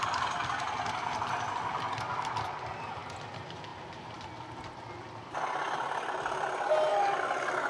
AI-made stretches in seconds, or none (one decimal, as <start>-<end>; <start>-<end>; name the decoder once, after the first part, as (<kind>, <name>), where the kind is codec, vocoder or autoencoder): none